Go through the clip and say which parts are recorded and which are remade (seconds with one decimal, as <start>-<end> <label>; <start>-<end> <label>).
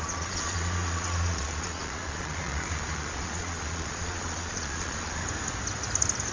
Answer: 0.0-5.2 remade; 5.2-6.3 recorded